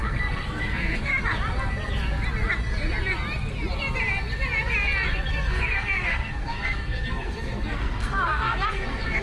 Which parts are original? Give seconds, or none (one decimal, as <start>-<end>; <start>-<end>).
1.1-5.3